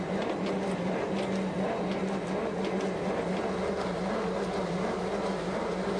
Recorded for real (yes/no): yes